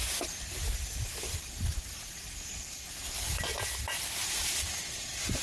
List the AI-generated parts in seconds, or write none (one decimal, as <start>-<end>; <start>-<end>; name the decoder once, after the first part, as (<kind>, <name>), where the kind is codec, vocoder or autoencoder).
none